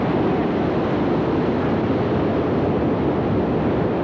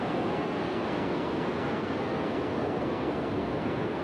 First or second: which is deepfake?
second